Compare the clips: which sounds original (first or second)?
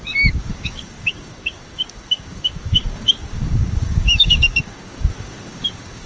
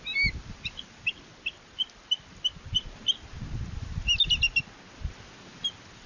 second